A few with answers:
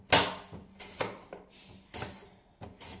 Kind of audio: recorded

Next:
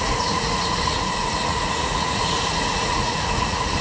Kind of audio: remade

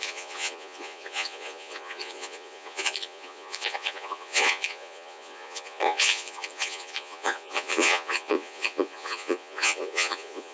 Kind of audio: remade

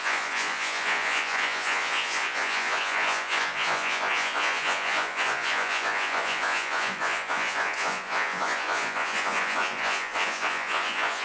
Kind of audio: remade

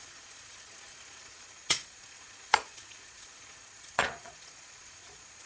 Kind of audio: remade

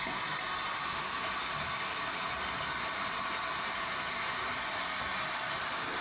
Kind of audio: recorded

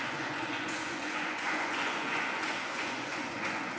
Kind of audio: remade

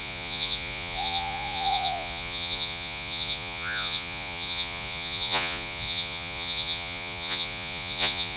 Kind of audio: remade